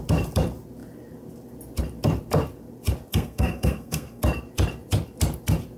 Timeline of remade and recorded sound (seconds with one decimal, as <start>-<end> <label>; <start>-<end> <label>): 0.0-3.1 recorded; 3.1-4.2 remade; 4.2-5.8 recorded